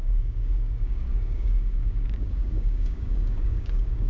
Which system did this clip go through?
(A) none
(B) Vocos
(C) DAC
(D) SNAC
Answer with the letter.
C